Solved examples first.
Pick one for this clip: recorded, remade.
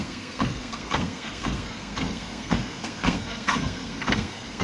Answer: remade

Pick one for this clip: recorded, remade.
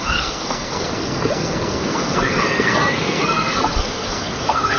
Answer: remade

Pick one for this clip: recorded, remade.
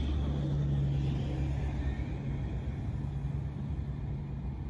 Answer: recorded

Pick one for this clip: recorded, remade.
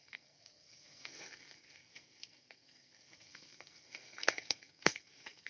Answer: remade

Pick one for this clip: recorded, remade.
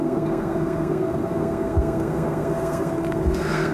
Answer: remade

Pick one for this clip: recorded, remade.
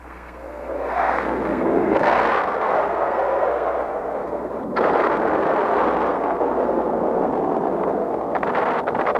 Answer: remade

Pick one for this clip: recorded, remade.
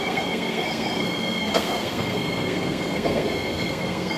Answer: remade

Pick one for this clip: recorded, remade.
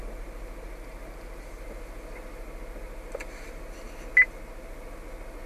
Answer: recorded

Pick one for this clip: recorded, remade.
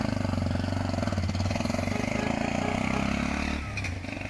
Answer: recorded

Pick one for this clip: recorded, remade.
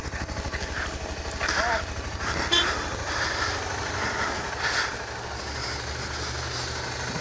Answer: recorded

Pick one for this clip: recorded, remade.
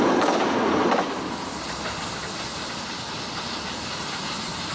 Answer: recorded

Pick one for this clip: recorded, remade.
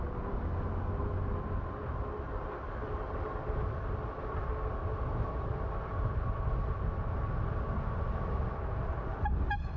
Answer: recorded